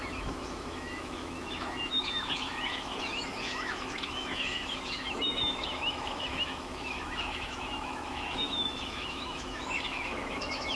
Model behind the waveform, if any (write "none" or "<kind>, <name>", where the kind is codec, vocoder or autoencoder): autoencoder, DAC-VAE